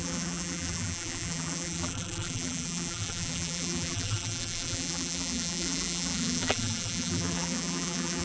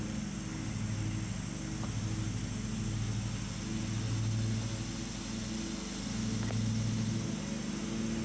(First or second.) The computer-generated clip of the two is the first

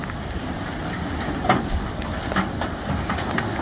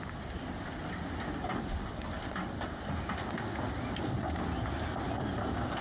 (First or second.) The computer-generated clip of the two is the first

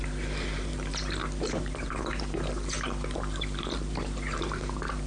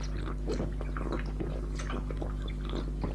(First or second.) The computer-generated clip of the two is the first